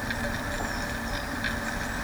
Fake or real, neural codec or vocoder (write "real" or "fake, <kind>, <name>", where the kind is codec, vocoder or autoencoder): real